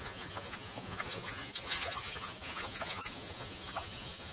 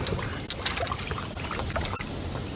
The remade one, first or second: first